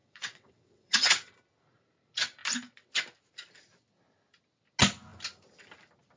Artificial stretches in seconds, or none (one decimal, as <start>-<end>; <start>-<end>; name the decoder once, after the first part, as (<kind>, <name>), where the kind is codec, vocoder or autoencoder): 0.0-1.3 (vocoder, WaveNeXt)